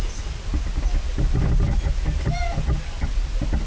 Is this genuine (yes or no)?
yes